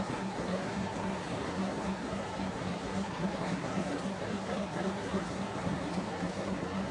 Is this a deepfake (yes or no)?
yes